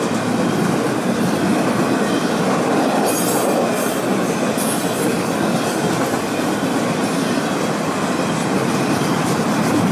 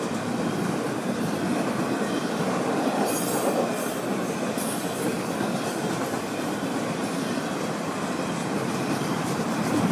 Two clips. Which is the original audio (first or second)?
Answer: first